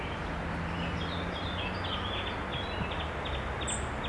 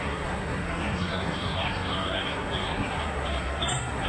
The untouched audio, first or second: first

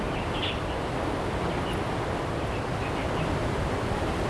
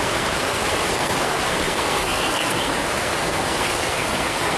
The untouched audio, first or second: first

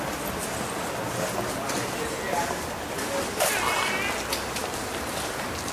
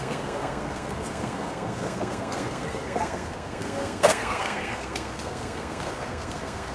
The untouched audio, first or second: first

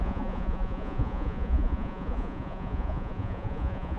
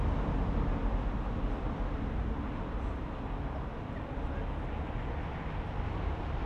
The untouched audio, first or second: second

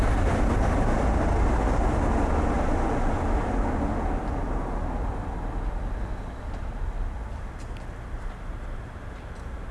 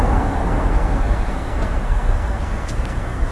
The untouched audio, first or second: first